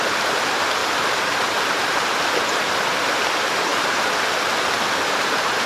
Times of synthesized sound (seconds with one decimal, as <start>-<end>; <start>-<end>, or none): none